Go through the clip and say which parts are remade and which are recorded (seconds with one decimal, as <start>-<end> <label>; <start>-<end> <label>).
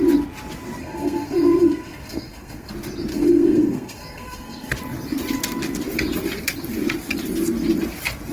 0.0-0.8 recorded; 0.8-2.7 remade; 2.7-3.1 recorded; 3.1-4.7 remade; 4.7-8.3 recorded